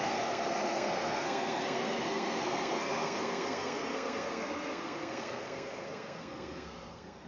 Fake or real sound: fake